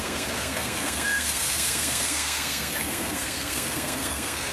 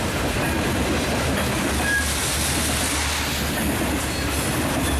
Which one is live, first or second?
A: second